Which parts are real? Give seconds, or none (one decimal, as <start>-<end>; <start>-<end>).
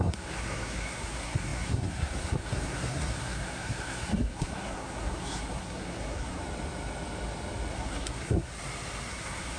6.4-7.7; 8.5-9.1